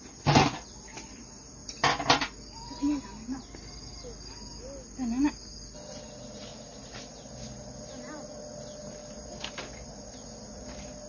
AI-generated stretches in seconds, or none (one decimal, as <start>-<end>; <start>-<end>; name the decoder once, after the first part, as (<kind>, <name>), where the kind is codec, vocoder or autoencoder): none